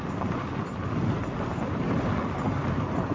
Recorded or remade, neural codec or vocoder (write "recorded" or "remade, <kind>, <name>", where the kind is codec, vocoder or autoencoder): recorded